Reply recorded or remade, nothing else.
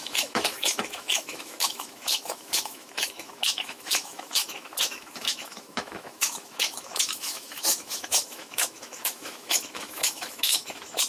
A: remade